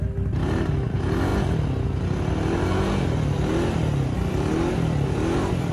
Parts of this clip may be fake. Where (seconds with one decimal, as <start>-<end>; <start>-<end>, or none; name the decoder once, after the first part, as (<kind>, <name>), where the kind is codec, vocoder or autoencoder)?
0.0-1.3 (vocoder, BigVGAN v2); 4.7-5.7